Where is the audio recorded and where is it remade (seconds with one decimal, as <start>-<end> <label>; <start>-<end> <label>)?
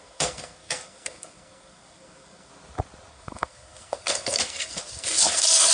0.0-2.5 remade; 2.5-3.1 recorded; 3.1-5.7 remade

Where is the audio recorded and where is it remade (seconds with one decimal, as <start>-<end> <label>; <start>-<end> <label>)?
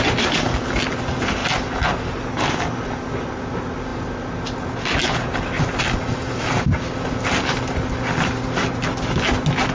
0.0-9.7 recorded